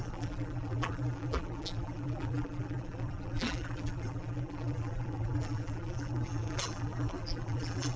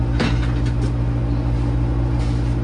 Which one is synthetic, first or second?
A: first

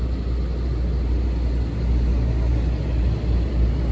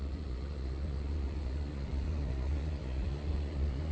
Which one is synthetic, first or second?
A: second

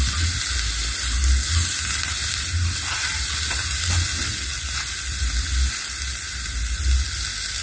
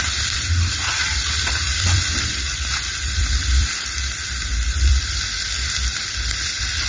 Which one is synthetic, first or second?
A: second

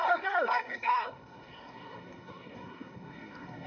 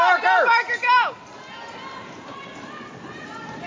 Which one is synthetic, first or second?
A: first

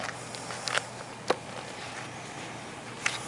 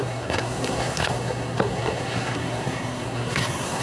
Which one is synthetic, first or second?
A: second